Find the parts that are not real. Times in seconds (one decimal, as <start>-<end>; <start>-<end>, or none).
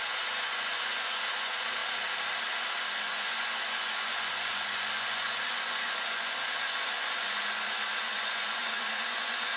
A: 0.0-1.8; 3.0-9.6